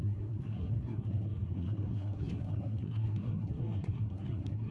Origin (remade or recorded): remade